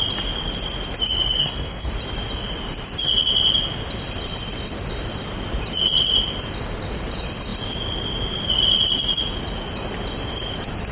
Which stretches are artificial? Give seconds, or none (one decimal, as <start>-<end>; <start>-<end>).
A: 1.4-1.9